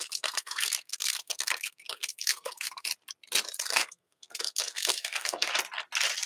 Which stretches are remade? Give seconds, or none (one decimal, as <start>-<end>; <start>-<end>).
0.0-2.9; 3.6-5.5